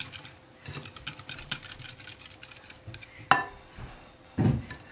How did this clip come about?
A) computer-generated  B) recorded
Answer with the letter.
B